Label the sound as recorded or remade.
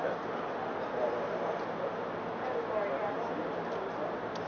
recorded